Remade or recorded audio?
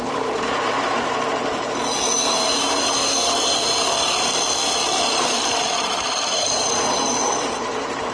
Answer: remade